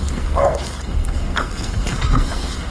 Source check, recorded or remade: remade